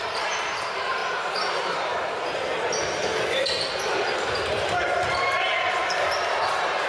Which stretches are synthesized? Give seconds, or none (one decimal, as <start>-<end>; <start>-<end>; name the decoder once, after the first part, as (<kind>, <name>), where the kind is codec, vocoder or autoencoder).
0.0-1.0 (vocoder, BigVGAN v2); 1.5-1.9; 4.5-5.8; 6.5-6.9